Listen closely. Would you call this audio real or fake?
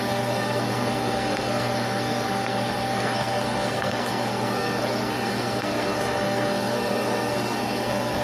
fake